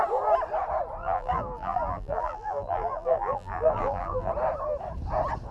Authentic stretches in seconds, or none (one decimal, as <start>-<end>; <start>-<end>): 0.0-1.0; 4.3-5.5